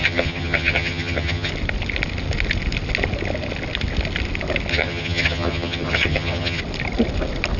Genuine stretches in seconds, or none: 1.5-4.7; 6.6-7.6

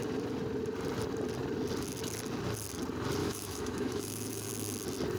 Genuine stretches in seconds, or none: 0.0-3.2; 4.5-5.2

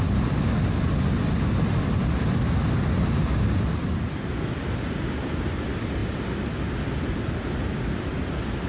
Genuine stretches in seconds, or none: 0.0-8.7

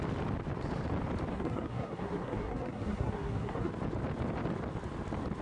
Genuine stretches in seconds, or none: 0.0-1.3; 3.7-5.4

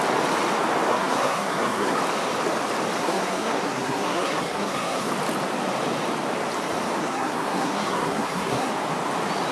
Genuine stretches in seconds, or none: 0.0-0.9; 2.0-3.0; 5.1-7.0; 8.7-9.5

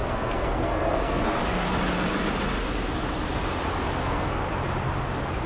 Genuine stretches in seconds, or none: 1.4-4.0; 4.4-5.5